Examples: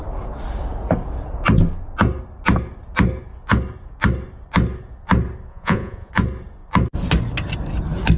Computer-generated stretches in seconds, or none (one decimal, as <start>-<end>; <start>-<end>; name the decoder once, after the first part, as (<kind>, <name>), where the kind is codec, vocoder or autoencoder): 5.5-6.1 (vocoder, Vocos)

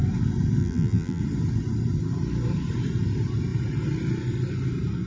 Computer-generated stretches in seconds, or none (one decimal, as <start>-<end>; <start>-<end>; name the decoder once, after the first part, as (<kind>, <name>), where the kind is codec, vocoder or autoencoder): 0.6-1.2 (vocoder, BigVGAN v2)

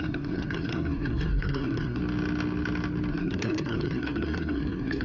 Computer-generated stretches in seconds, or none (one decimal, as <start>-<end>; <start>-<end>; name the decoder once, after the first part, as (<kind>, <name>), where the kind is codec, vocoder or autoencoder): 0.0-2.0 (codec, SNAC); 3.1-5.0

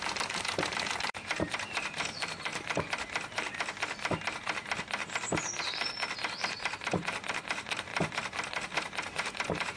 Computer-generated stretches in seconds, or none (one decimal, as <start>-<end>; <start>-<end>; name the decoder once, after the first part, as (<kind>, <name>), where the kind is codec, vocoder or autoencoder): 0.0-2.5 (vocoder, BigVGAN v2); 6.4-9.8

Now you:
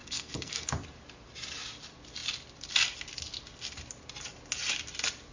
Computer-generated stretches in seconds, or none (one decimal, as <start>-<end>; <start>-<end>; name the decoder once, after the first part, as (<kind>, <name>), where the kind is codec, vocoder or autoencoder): 0.0-0.7 (codec, SNAC)